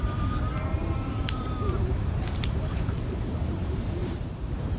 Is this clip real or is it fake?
fake